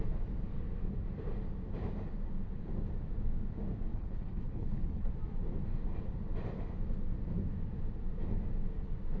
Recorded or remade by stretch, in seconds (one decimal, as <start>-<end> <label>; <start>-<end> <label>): 0.0-3.9 recorded; 3.9-5.1 remade; 5.1-9.2 recorded